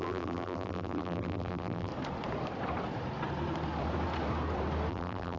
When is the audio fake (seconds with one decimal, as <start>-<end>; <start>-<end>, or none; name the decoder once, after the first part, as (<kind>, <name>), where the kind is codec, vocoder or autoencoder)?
0.0-1.9 (vocoder, BigVGAN v2); 4.9-5.4